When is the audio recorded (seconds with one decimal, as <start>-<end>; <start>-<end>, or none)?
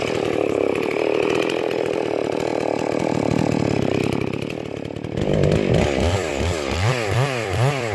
2.5-4.0; 6.3-6.9